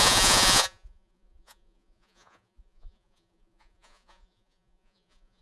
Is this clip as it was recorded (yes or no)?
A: no